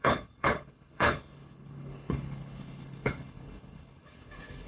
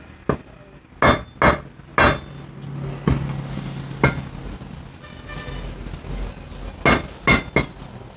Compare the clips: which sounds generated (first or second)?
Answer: first